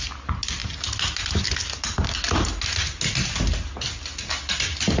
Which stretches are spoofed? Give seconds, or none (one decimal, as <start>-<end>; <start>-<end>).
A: none

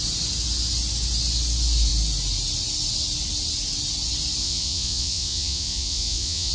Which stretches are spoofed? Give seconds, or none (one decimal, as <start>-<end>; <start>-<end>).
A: 4.4-6.5

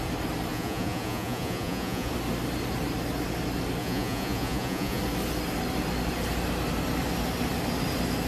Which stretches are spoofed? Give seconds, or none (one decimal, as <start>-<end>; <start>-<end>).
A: 0.5-2.1; 3.8-5.0